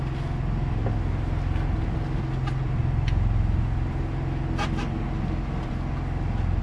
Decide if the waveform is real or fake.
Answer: real